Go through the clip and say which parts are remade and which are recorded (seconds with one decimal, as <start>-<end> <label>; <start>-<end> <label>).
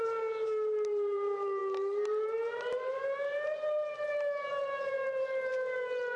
0.0-6.2 remade